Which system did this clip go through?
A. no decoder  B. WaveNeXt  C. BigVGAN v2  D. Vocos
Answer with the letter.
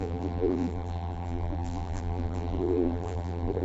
C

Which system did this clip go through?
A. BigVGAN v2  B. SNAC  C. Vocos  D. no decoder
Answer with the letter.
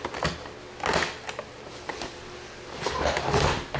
D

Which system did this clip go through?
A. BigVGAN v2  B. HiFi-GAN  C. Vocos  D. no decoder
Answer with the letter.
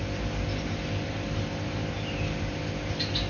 D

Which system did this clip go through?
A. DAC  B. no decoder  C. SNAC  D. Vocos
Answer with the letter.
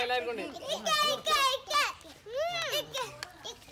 B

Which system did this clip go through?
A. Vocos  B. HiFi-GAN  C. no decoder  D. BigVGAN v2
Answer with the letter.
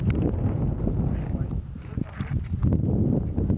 C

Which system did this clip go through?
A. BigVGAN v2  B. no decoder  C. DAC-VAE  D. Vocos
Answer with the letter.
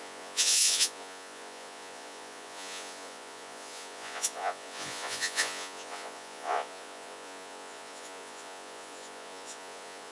D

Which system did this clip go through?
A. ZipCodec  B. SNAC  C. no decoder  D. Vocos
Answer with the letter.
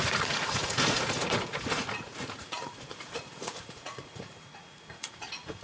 D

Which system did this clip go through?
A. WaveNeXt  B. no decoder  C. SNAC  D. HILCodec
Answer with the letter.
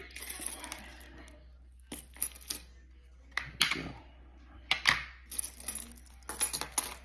B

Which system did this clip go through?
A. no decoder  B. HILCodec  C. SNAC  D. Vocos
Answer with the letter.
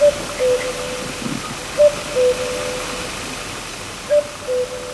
A